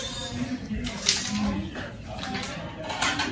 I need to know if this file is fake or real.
real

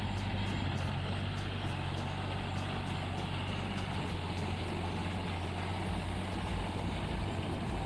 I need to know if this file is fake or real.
real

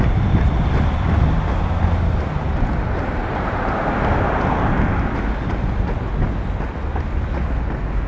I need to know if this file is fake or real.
real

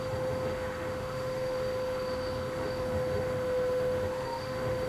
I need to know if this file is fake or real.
fake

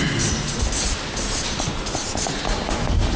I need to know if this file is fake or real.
real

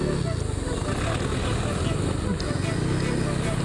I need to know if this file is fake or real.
real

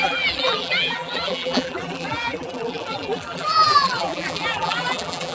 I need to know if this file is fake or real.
fake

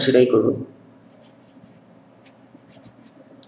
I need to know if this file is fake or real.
real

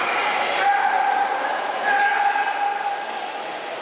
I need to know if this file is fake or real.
real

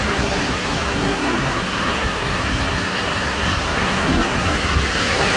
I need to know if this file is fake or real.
fake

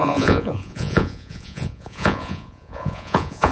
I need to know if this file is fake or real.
fake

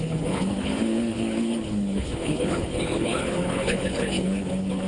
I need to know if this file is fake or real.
fake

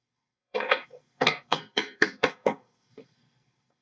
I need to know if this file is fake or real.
fake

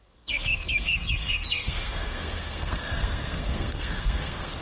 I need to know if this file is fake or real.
fake